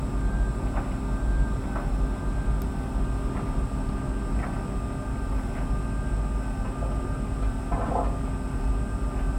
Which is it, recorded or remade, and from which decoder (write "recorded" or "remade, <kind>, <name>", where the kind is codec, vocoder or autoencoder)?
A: recorded